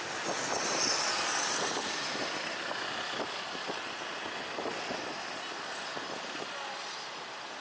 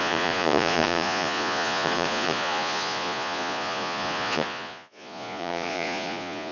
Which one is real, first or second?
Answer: first